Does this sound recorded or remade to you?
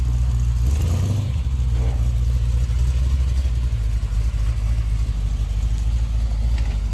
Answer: recorded